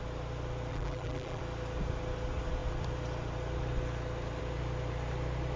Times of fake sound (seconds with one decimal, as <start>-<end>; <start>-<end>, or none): 0.7-1.4